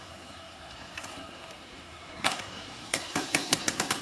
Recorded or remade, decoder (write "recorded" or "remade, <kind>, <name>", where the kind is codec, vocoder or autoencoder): remade, codec, SNAC